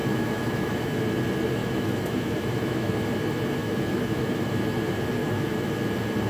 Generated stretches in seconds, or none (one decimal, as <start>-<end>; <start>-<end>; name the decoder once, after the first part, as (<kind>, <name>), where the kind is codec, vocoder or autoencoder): 0.0-1.0 (autoencoder, DAC-VAE); 1.6-2.9; 3.6-4.5; 5.2-5.7